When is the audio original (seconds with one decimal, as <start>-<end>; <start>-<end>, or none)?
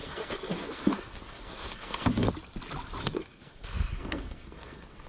2.3-3.0